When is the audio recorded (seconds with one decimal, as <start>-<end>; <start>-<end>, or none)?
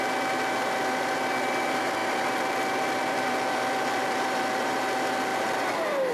0.0-2.0; 4.8-5.3